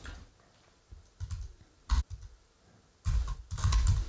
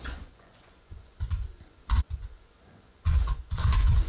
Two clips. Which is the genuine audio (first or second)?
first